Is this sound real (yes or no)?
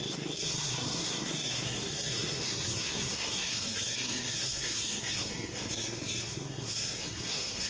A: no